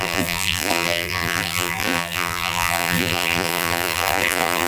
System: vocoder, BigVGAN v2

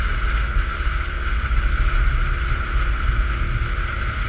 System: none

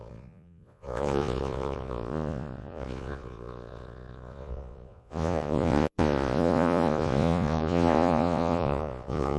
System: vocoder, Vocos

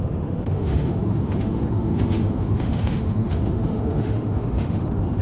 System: autoencoder, DAC-VAE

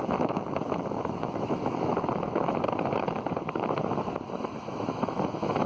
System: autoencoder, DAC-VAE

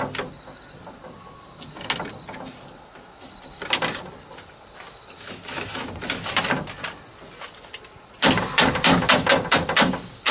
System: none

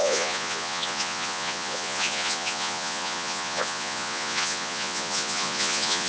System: vocoder, Vocos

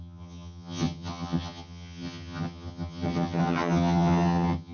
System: vocoder, HiFi-GAN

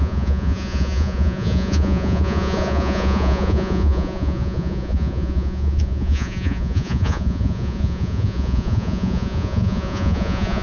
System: vocoder, Vocos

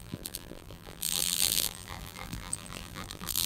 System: vocoder, BigVGAN v2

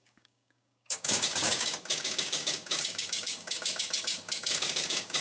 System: codec, DAC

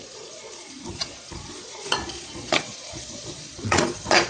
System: vocoder, Vocos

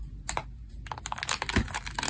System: none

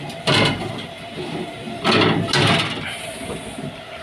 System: none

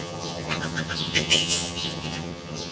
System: vocoder, HiFi-GAN